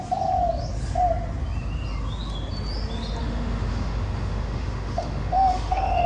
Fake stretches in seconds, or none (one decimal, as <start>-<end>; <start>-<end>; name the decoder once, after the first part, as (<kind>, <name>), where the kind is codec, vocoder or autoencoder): 3.2-6.1 (autoencoder, DAC-VAE)

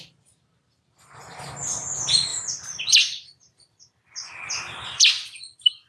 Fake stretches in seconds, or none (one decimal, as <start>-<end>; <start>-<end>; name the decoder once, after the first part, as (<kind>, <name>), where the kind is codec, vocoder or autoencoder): 2.3-5.9 (vocoder, BigVGAN v2)

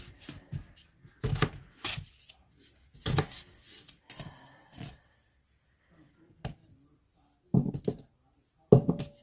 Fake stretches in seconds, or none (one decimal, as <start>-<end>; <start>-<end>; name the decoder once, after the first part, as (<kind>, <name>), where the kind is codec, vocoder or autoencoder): none

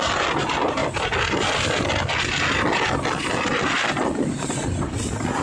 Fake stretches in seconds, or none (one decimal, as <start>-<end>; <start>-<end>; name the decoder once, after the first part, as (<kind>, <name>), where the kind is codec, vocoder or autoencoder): none

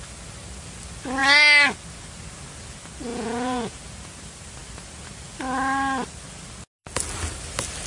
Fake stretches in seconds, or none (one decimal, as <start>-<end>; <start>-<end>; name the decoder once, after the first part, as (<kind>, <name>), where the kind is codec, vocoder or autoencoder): 3.1-3.8 (vocoder, Vocos)

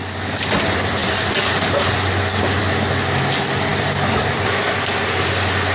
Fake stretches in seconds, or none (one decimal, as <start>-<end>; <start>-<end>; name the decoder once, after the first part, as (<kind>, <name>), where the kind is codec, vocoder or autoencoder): 3.7-4.6 (vocoder, BigVGAN v2)